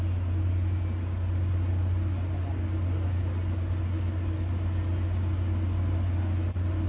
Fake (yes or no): no